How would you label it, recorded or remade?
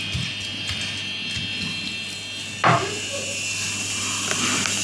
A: recorded